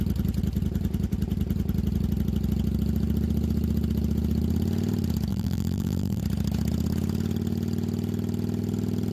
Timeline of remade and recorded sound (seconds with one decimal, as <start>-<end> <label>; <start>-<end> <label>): 0.0-5.3 recorded; 5.3-6.2 remade; 6.2-9.1 recorded